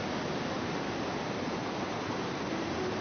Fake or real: real